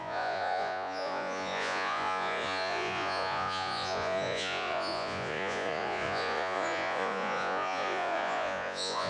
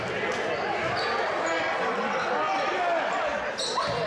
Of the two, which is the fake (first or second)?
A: first